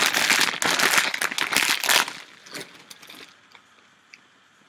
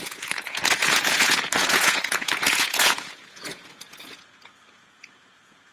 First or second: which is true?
first